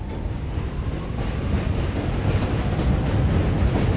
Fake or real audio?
real